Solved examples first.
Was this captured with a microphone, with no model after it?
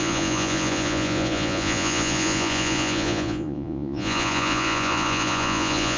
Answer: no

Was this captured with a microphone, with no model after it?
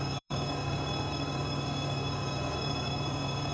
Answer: no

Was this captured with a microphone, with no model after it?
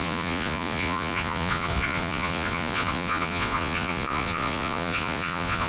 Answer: no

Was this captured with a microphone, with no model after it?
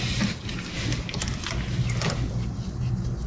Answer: yes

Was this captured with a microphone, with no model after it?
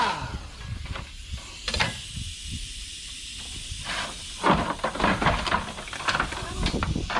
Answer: yes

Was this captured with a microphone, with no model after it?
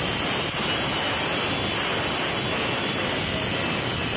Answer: yes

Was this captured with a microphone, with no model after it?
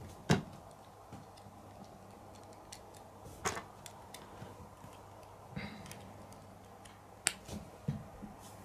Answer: yes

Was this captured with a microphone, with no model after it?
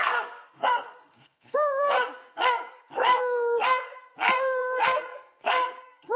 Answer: no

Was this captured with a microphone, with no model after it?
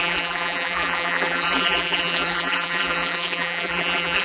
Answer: no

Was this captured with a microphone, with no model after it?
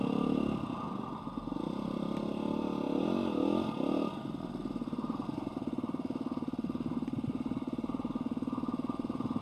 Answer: yes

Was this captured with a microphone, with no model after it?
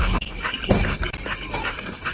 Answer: yes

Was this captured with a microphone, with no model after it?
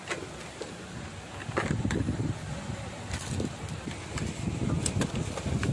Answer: yes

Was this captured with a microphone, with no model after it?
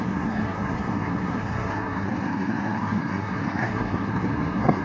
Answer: no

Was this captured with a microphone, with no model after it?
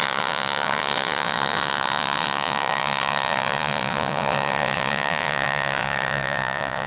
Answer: no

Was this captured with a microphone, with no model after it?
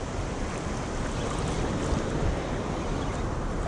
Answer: yes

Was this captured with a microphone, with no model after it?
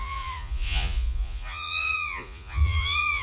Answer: no